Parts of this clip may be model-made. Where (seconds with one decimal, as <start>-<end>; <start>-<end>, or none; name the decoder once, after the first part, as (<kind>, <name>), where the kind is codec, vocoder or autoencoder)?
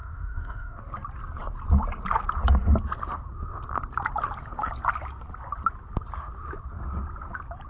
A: 0.0-0.8 (autoencoder, DAC-VAE)